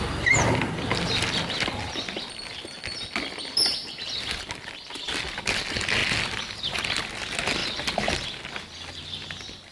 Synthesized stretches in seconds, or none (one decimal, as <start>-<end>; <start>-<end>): none